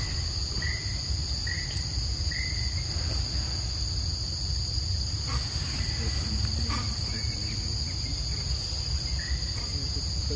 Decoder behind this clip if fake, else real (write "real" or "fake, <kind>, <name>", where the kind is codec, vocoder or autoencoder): real